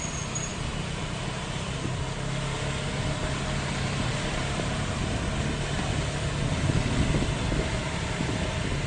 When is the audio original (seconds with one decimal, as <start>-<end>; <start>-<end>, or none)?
0.0-3.2; 5.1-7.8; 8.5-8.9